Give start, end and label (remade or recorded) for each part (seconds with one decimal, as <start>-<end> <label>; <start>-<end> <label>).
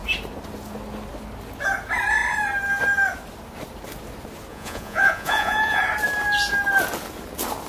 0.0-4.5 recorded; 4.5-5.8 remade; 5.8-7.7 recorded